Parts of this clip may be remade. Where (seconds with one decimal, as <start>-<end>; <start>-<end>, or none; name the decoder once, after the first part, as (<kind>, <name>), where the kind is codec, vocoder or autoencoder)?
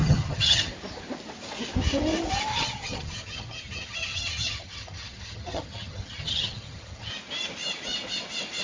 0.0-0.7 (vocoder, HiFi-GAN); 2.5-7.1